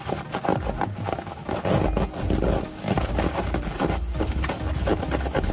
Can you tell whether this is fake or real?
real